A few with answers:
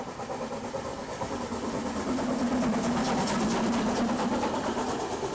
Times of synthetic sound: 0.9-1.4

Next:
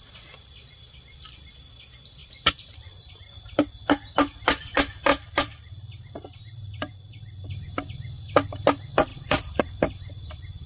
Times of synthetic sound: 2.2-3.1; 5.1-7.5; 9.1-9.6

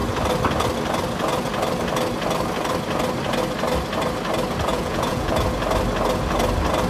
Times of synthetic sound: 4.7-5.3